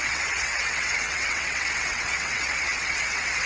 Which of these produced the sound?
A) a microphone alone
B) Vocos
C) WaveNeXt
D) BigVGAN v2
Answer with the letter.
C